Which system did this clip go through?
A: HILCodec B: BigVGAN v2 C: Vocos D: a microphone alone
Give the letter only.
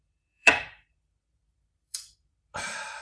B